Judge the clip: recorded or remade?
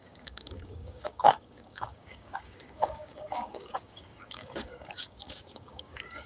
remade